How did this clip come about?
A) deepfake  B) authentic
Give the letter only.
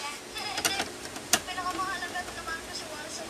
B